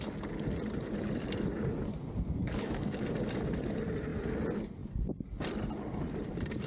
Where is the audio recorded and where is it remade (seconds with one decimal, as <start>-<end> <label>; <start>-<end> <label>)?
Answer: 0.0-2.4 recorded; 2.4-3.1 remade; 3.1-6.7 recorded